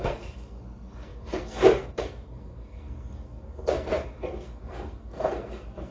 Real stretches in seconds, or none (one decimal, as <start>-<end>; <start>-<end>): none